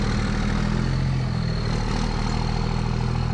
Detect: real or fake real